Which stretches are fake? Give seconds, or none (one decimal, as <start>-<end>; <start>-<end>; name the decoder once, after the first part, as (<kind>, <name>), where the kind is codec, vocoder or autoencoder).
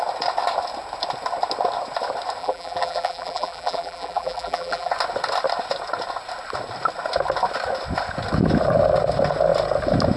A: 2.4-4.9 (vocoder, BigVGAN v2)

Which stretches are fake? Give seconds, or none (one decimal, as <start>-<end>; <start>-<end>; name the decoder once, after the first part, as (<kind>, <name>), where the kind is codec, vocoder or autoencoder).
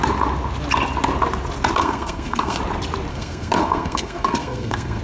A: 1.8-2.6 (codec, SNAC); 3.1-5.0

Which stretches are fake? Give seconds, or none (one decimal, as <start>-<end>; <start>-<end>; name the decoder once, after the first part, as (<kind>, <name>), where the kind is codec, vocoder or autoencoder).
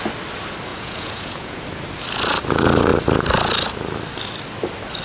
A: 0.7-1.6 (vocoder, Vocos)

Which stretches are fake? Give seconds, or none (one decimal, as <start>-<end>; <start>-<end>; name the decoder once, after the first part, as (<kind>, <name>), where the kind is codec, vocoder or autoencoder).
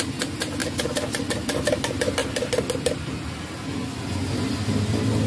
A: none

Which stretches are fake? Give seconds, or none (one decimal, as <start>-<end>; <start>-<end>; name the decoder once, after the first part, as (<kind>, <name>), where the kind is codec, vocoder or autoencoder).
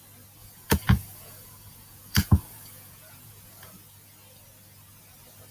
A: 0.4-3.7 (vocoder, Vocos)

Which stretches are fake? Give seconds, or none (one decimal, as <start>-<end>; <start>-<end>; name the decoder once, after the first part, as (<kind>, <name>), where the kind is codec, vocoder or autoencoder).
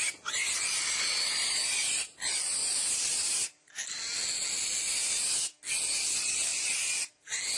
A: 2.6-3.7 (vocoder, BigVGAN v2); 4.9-5.5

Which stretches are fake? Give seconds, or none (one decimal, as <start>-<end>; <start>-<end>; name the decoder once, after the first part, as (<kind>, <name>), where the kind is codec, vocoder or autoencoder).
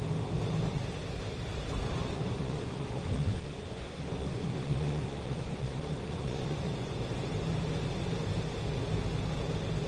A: 1.8-7.0 (vocoder, Vocos)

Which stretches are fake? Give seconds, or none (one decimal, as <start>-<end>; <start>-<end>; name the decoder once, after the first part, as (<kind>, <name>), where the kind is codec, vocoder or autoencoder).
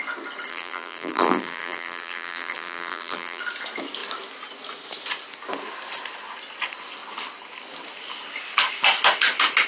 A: 0.5-3.4 (vocoder, BigVGAN v2)